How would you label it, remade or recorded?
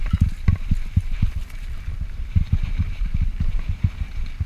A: remade